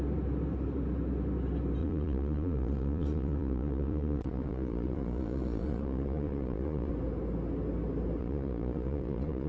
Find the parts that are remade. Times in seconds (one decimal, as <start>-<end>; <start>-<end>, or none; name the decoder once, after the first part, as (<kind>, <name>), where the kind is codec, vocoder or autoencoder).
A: 1.8-6.9 (vocoder, Vocos); 8.2-9.5